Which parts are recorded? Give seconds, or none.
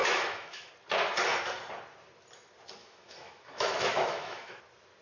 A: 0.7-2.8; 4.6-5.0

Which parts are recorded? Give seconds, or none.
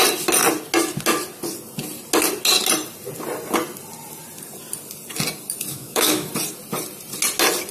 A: 0.0-5.7; 6.3-7.7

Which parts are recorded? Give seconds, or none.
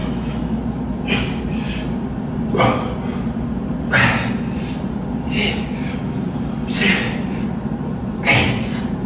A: 0.6-9.1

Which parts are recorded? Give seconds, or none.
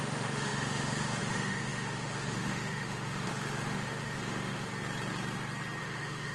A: 4.7-5.8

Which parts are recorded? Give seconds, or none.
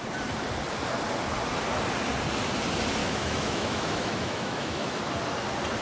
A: 0.0-3.0; 5.0-5.8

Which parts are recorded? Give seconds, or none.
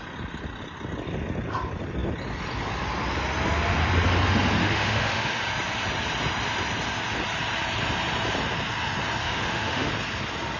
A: 0.0-4.6; 5.4-9.2; 9.9-10.6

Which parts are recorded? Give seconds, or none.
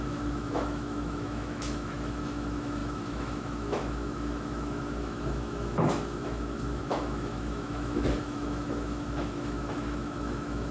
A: none